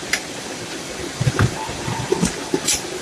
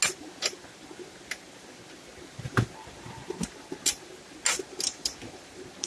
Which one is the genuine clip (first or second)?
second